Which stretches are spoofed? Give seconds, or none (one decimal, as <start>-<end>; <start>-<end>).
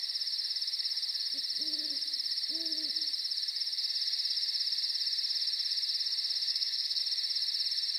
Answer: 6.5-7.0